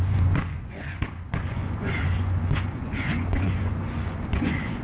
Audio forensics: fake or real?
fake